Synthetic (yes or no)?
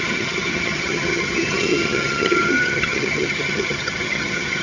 yes